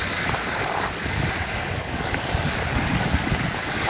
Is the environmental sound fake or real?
fake